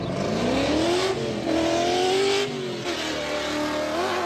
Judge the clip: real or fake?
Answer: real